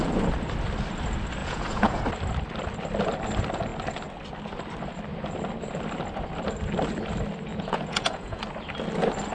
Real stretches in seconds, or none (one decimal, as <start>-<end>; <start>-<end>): 0.0-1.4; 2.0-7.5; 8.4-9.3